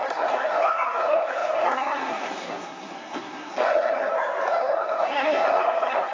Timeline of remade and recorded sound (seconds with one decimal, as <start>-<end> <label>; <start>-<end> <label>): 0.0-4.1 remade; 4.1-4.6 recorded; 4.6-6.1 remade

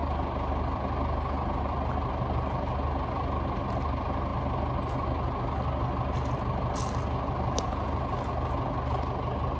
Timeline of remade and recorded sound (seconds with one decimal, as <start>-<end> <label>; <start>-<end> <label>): 0.0-9.6 recorded

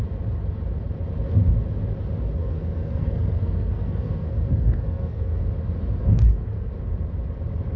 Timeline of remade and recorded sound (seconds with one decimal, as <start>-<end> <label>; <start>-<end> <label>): 0.0-2.4 recorded; 2.4-5.4 remade; 5.4-6.0 recorded; 6.0-6.7 remade; 6.7-7.8 recorded

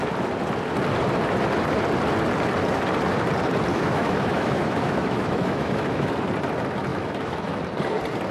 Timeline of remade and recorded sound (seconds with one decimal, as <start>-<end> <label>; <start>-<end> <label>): 0.0-3.7 recorded; 3.7-6.1 remade; 6.1-6.9 recorded; 6.9-7.6 remade; 7.6-8.3 recorded

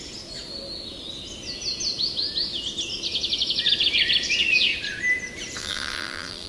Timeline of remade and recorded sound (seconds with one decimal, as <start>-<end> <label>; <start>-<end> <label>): 0.0-5.6 recorded; 5.6-6.5 remade